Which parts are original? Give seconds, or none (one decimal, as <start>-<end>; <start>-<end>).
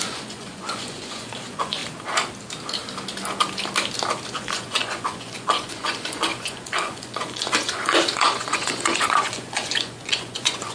1.8-4.3